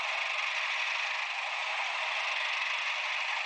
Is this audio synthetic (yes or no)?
no